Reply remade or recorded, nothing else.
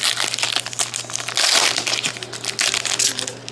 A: recorded